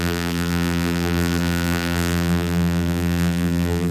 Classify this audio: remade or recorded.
remade